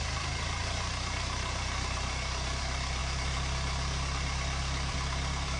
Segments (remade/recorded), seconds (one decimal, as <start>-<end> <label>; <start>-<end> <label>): 0.0-0.6 remade; 0.6-2.6 recorded; 2.6-5.6 remade